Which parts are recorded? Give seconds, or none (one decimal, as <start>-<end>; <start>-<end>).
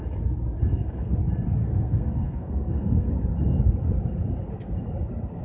0.0-0.7; 1.2-1.6; 3.1-5.4